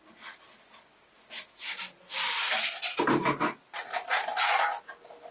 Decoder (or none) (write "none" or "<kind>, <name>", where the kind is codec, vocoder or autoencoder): none